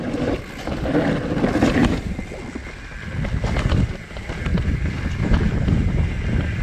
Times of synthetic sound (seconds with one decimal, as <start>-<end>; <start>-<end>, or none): 4.5-5.4